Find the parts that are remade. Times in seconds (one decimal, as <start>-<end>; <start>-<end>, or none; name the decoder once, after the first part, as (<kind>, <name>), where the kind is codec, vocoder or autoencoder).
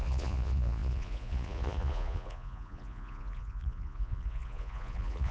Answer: 0.0-5.3 (vocoder, Vocos)